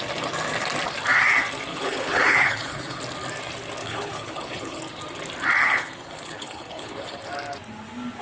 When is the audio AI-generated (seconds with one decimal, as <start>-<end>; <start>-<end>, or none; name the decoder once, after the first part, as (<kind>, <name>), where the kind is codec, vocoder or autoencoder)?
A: 1.7-3.0 (codec, HILCodec); 3.8-4.8; 5.6-7.3